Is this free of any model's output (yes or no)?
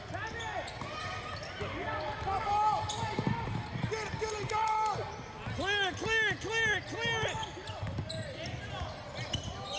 yes